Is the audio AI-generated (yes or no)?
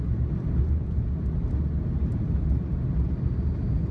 no